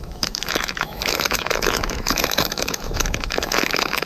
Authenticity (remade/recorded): remade